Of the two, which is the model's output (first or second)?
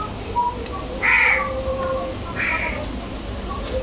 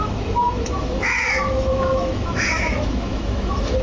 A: second